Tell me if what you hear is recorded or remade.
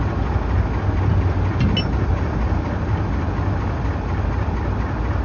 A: recorded